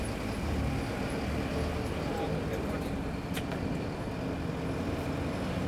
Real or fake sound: real